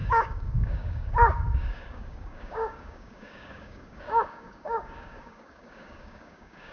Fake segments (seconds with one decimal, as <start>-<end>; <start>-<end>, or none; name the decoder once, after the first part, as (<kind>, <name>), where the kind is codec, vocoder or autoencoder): 0.0-6.7 (codec, DAC)